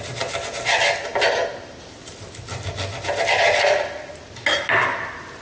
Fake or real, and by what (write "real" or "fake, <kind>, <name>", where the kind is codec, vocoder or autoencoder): real